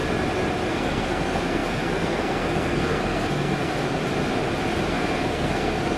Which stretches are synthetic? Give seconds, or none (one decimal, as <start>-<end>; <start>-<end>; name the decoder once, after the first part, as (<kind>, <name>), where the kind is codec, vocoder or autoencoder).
0.7-4.0 (codec, SNAC); 4.9-6.0